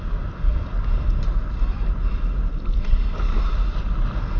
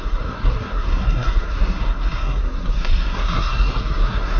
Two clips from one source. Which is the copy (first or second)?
second